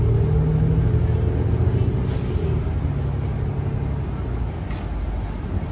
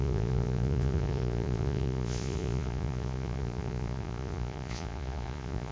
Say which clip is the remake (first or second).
second